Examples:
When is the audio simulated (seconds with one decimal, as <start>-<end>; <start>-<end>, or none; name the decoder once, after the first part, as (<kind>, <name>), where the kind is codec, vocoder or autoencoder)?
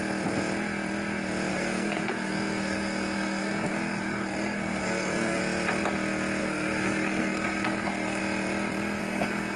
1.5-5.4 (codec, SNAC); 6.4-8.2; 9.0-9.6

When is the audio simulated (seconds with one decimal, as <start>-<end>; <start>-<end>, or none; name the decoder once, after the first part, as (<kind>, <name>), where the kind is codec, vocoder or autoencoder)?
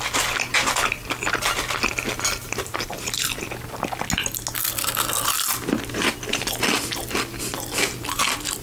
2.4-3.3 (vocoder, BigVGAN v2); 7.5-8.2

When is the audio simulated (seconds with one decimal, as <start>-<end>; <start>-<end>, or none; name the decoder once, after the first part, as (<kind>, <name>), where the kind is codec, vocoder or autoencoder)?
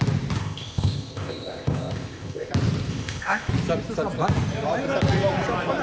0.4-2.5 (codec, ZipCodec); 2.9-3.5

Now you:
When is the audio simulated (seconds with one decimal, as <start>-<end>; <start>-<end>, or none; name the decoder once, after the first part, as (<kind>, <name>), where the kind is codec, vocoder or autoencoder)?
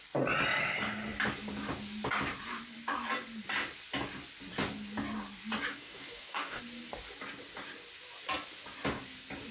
5.7-6.6 (codec, DAC)